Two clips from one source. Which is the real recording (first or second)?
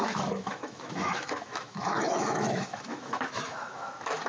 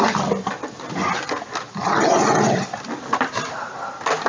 second